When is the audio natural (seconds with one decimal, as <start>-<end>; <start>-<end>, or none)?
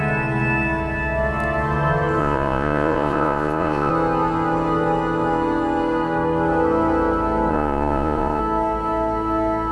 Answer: 0.0-2.2; 3.9-7.5; 8.4-9.7